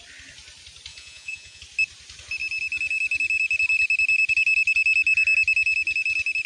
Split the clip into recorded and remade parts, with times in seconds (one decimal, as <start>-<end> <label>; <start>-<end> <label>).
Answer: 0.0-0.9 recorded; 0.9-1.6 remade; 1.6-6.5 recorded

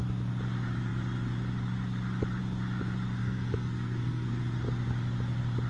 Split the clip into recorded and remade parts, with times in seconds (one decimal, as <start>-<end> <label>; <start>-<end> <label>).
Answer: 0.0-3.2 recorded; 3.2-4.4 remade; 4.4-5.7 recorded

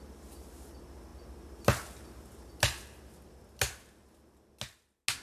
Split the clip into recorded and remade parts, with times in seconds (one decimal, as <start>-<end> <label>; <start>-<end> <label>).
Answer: 0.0-5.2 recorded